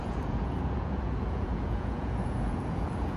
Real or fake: fake